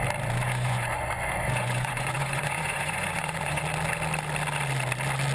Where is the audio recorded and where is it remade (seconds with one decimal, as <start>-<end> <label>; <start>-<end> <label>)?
0.0-0.4 recorded; 0.4-3.6 remade; 3.6-5.3 recorded